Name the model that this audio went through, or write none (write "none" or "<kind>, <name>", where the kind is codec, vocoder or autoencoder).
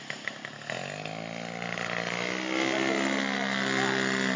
none